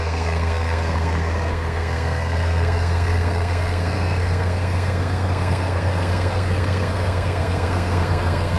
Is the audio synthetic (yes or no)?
yes